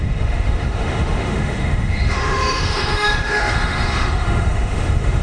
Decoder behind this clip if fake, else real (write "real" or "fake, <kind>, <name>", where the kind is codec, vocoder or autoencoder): fake, autoencoder, DAC-VAE